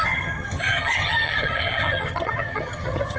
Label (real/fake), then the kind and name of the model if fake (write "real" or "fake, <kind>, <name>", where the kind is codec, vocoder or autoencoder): fake, vocoder, HiFi-GAN